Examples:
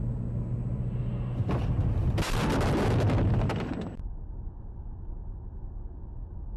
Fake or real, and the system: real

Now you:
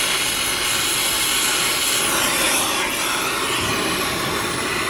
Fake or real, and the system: real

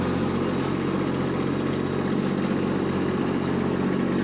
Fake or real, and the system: real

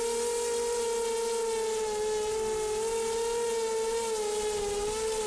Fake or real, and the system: real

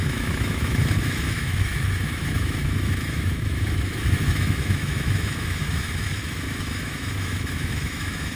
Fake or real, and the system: fake, autoencoder, DAC-VAE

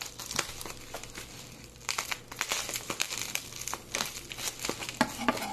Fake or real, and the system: real